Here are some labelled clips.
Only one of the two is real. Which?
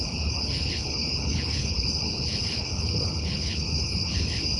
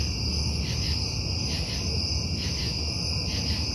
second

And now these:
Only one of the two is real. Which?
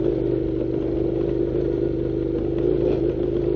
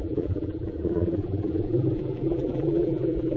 first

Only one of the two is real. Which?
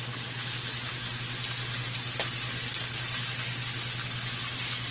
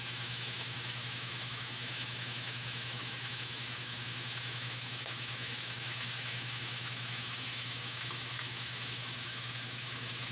first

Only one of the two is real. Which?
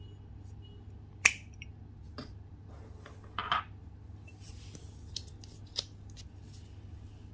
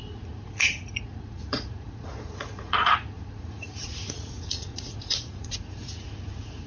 first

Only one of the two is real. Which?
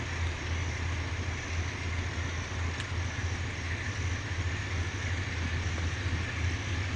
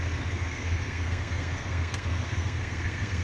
first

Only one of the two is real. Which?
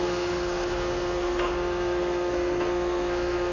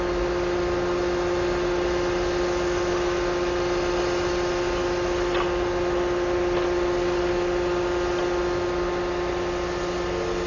second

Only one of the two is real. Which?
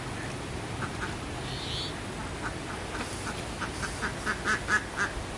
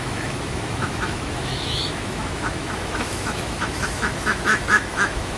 first